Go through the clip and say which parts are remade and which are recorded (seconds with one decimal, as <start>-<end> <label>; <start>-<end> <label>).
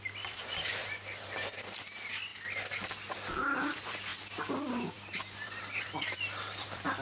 0.0-2.3 remade; 2.3-3.1 recorded; 3.1-7.0 remade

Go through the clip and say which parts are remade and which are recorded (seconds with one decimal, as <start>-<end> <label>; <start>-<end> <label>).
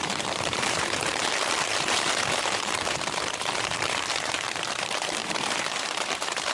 0.0-6.5 remade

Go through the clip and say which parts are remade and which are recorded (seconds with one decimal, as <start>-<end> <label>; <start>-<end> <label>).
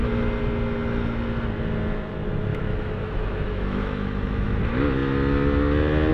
0.0-2.5 recorded; 2.5-4.6 remade; 4.6-6.1 recorded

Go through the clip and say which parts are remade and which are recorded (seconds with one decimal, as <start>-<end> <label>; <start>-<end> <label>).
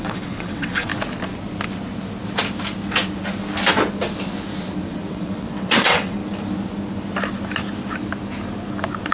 0.0-0.9 remade; 0.9-5.1 recorded; 5.1-6.2 remade; 6.2-9.1 recorded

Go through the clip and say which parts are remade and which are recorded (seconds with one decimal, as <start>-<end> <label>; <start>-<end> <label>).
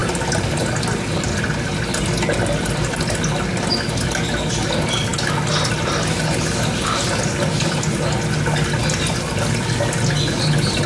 0.0-10.9 recorded